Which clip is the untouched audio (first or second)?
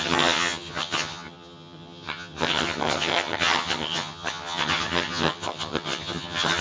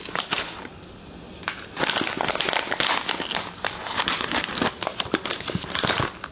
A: second